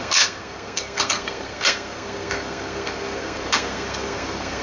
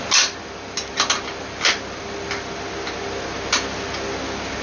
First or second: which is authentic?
second